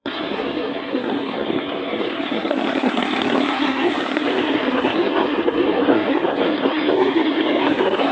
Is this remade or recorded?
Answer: remade